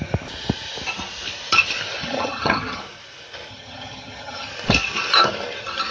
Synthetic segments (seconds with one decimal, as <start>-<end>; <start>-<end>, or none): 2.0-2.8; 3.5-4.5

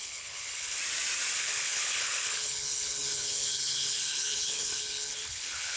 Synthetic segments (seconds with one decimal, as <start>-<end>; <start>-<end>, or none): 0.0-0.8; 1.4-5.8

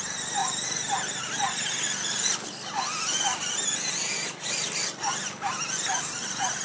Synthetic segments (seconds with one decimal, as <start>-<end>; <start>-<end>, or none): none

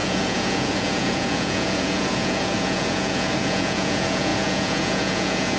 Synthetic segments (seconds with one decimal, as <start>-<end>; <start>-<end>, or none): 0.0-5.6

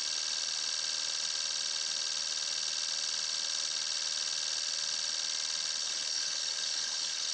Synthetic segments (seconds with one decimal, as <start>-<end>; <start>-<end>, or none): 5.8-7.3

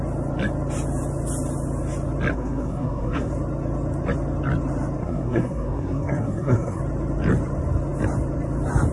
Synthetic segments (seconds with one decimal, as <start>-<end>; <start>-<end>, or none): 2.3-3.3; 5.0-6.8

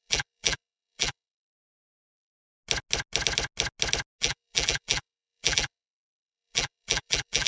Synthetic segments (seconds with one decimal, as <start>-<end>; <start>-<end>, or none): 0.0-2.3; 4.2-7.5